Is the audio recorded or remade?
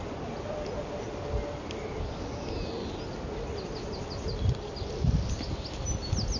recorded